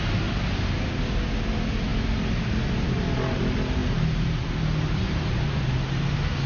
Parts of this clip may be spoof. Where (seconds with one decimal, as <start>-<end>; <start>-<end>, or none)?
none